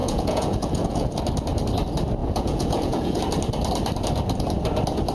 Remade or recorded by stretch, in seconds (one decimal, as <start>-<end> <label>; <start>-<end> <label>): 0.0-1.2 remade; 1.2-2.2 recorded; 2.2-3.2 remade; 3.2-5.1 recorded